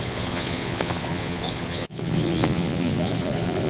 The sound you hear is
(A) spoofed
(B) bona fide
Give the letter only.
A